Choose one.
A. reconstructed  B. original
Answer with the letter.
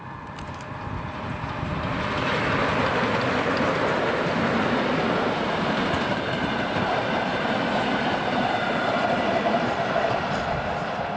B